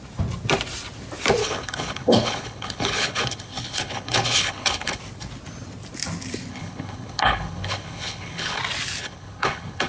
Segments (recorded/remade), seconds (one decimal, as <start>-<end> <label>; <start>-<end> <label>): 0.0-1.4 recorded; 1.4-5.0 remade; 5.0-6.5 recorded; 6.5-8.6 remade; 8.6-9.0 recorded; 9.0-9.9 remade